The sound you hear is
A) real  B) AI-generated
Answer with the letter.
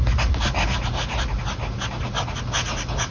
A